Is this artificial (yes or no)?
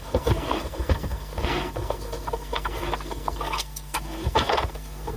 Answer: yes